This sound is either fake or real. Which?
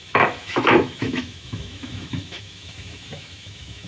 fake